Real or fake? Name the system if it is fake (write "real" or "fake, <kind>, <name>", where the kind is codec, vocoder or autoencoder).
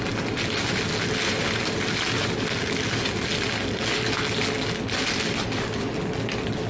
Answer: real